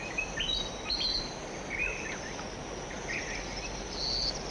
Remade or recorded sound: recorded